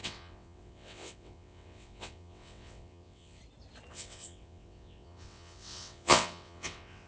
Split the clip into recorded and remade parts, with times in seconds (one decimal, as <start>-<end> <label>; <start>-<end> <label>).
0.0-3.4 remade; 3.4-3.9 recorded; 3.9-7.1 remade